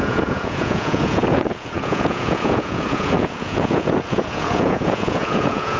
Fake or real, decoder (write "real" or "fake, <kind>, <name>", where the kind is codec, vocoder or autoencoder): fake, vocoder, Vocos